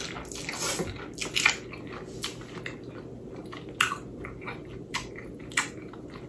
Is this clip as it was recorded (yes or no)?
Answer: yes